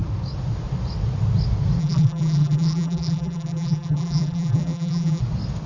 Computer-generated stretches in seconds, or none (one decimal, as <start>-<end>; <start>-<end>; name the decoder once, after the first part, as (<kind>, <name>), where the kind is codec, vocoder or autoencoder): 1.8-5.2 (vocoder, BigVGAN v2)